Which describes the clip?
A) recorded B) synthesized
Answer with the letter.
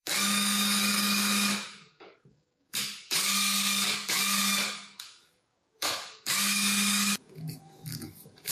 B